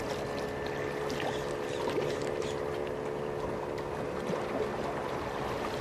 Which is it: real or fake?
real